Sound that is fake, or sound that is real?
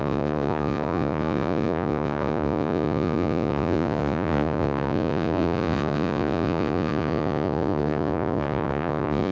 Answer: fake